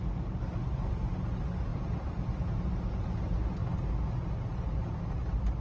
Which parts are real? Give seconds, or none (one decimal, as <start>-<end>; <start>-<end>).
0.0-5.6